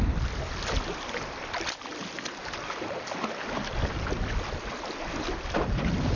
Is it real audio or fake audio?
real